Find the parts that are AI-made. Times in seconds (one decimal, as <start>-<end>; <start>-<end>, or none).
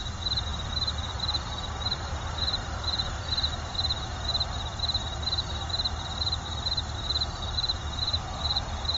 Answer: 0.0-4.3; 5.9-9.0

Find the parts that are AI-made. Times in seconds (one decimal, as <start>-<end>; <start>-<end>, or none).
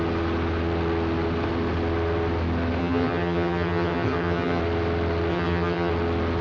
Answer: 2.8-4.6; 5.3-5.9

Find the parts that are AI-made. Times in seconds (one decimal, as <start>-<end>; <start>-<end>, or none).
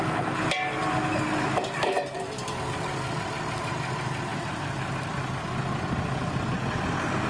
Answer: 4.3-4.9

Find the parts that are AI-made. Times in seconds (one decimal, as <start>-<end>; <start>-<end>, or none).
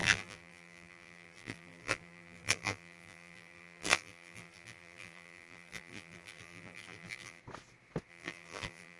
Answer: 0.0-7.4; 8.1-9.0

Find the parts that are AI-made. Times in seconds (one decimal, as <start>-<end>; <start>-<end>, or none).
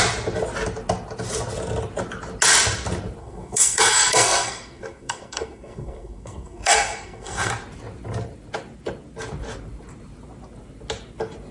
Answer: 3.2-7.5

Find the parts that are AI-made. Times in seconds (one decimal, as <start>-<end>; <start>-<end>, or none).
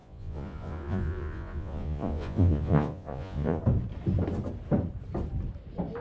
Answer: 0.0-3.6